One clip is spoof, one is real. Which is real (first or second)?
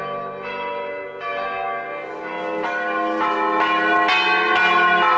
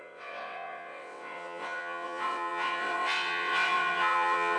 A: first